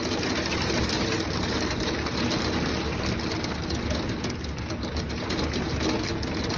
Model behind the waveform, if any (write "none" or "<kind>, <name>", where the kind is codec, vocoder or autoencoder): none